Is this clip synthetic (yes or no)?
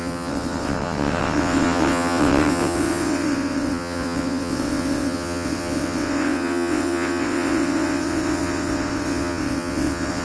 yes